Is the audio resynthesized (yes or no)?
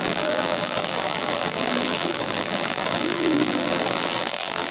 yes